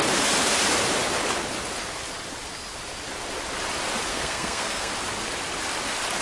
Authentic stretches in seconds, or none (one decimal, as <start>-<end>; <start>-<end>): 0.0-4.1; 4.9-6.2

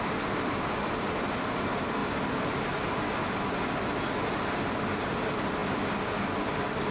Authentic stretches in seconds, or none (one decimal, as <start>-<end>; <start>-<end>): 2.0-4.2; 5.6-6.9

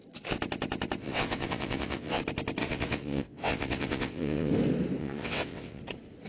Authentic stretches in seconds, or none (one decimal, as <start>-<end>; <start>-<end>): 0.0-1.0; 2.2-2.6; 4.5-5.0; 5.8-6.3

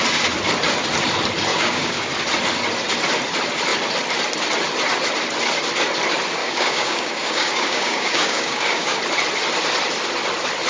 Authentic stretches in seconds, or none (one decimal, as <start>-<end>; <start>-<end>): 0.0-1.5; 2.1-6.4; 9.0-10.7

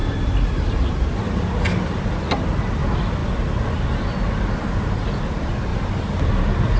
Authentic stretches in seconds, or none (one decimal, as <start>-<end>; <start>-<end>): 0.0-6.8